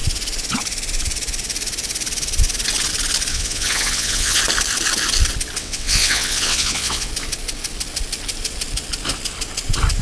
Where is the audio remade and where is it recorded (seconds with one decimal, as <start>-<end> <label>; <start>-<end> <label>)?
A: 0.0-3.3 recorded; 3.3-4.4 remade; 4.4-5.6 recorded; 5.6-7.1 remade; 7.1-10.0 recorded